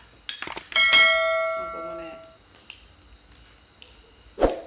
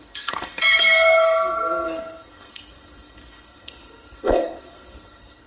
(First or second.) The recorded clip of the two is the first